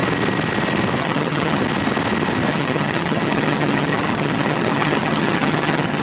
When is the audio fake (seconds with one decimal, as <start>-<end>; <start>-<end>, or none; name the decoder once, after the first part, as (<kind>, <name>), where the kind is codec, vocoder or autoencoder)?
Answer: 1.0-1.6 (vocoder, HiFi-GAN); 2.5-6.0